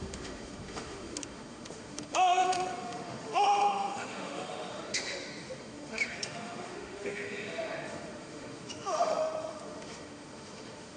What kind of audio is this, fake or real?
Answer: fake